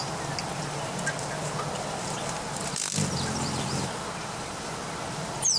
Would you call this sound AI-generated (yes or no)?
no